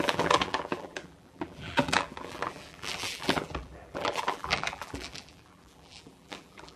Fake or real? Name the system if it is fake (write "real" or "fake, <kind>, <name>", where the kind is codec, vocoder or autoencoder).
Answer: fake, vocoder, BigVGAN v2